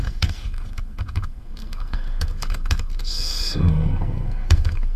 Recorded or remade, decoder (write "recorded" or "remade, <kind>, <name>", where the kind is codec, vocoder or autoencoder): remade, codec, SNAC